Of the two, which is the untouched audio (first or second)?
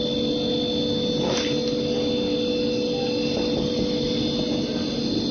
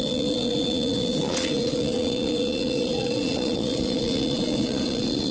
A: first